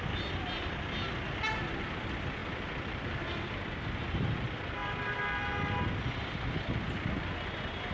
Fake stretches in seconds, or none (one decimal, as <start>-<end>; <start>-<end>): none